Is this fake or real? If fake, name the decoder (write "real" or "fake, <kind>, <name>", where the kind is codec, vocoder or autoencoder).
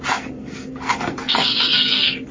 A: fake, codec, SNAC